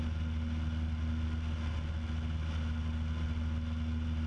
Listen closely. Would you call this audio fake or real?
real